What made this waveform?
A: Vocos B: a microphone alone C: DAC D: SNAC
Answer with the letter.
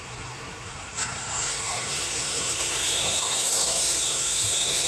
D